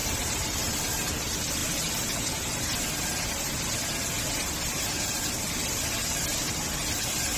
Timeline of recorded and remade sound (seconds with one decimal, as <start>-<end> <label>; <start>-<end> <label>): 0.0-0.8 remade; 0.8-7.4 recorded